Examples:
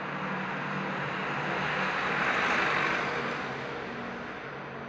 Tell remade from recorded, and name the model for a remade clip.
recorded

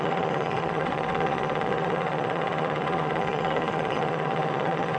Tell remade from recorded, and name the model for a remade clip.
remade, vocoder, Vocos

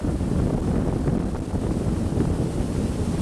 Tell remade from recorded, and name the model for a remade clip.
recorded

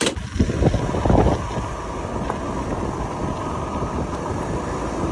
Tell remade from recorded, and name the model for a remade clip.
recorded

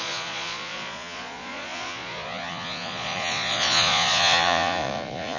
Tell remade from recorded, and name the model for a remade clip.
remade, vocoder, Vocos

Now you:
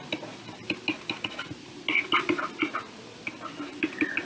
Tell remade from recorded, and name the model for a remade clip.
recorded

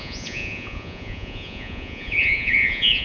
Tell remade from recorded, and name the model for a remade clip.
remade, vocoder, Vocos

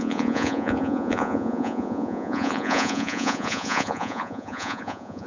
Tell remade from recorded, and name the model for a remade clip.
remade, vocoder, Vocos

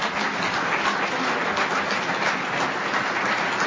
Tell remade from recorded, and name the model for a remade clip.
recorded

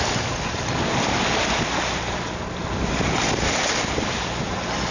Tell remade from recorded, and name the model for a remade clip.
recorded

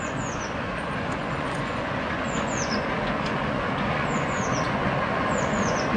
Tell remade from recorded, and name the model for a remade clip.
remade, vocoder, Vocos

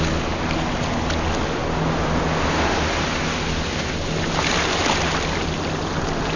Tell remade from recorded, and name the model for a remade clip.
recorded